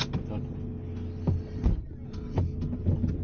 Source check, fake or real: real